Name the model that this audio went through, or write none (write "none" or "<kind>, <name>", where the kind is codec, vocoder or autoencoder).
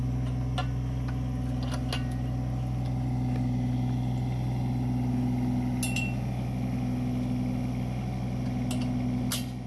none